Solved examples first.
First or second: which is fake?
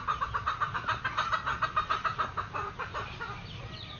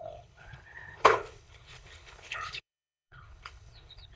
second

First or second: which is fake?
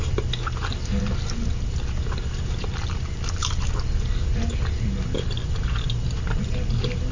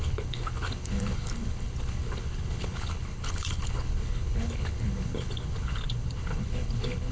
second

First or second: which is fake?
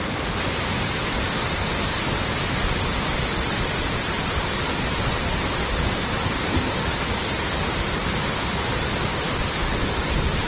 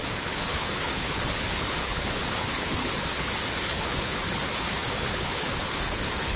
second